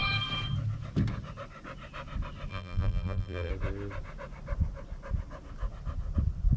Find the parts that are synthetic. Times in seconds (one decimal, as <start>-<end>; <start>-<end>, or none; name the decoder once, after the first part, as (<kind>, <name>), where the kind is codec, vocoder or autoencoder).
2.5-3.5 (vocoder, BigVGAN v2)